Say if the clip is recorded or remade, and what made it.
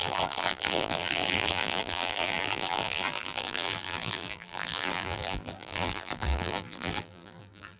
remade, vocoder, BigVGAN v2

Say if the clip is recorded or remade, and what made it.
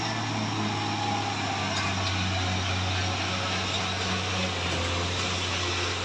recorded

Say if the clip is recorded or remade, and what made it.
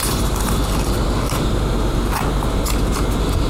recorded